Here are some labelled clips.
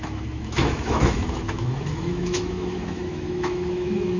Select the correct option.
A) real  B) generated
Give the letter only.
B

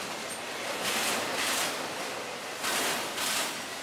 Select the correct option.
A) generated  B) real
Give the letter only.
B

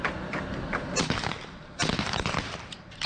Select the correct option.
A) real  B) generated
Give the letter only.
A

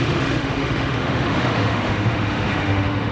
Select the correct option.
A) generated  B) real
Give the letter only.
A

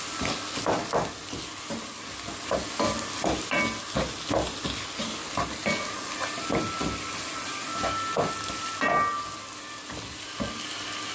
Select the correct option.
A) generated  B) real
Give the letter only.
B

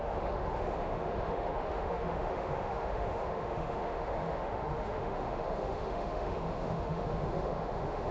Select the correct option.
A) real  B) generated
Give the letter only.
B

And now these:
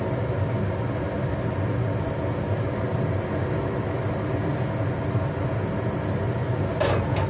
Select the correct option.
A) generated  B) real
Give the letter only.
B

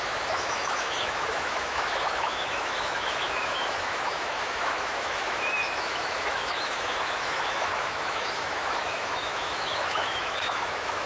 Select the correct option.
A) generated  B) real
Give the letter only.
A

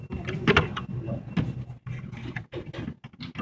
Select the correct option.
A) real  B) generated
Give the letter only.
A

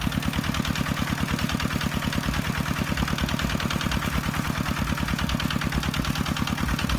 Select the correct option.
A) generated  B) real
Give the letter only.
B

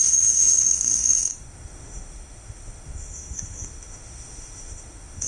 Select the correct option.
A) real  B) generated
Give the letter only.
B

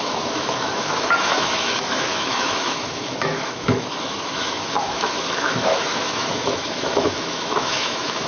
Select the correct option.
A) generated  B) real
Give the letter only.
A